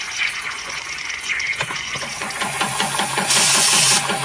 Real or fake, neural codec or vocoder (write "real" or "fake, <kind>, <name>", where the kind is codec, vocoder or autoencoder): fake, vocoder, Vocos